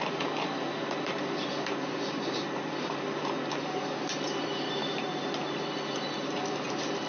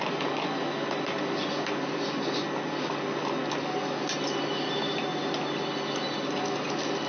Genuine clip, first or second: second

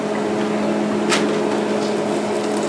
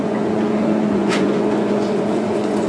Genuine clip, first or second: first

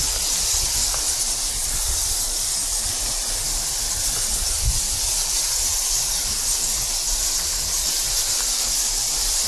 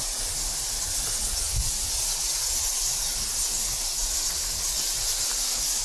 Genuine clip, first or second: second